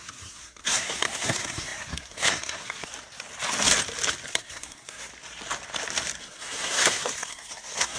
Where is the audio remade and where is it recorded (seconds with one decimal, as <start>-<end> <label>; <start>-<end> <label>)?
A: 0.0-2.9 remade; 2.9-4.3 recorded; 4.3-5.1 remade; 5.1-6.2 recorded; 6.2-8.0 remade